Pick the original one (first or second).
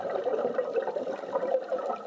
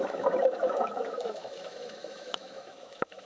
first